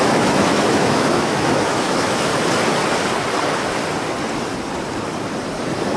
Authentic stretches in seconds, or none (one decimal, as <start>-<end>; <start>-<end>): 2.3-6.0